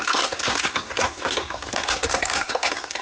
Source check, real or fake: fake